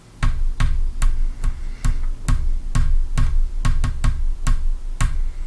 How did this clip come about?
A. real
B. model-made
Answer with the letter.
A